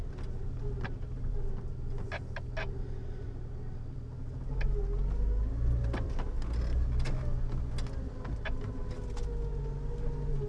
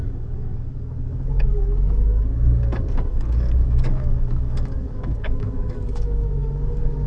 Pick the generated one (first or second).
second